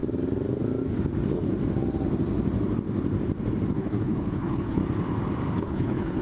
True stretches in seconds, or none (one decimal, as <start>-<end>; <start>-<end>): 0.0-3.7; 4.8-5.6